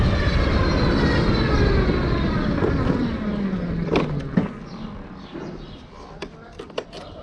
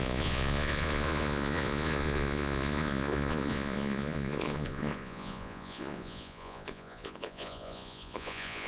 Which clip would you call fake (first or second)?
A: second